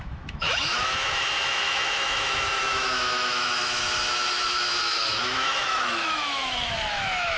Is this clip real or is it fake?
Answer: fake